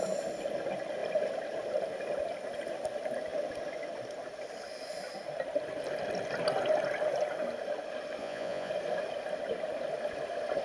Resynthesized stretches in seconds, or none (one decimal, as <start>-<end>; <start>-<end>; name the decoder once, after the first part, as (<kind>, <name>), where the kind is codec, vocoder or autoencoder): 8.2-8.7 (vocoder, Vocos)